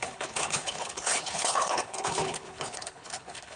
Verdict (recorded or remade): remade